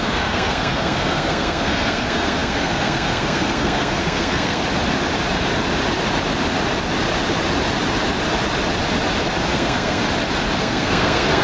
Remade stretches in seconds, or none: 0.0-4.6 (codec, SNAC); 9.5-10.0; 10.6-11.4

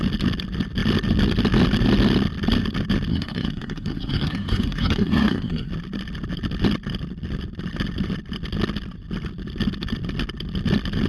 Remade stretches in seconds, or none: 3.1-5.7 (codec, SNAC)

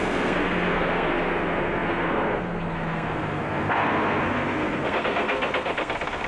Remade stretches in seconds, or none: 0.0-6.3 (codec, SNAC)